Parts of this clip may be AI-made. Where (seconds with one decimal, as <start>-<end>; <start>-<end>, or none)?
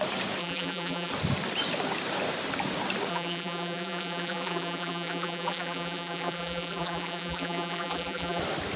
0.4-1.1; 3.1-8.4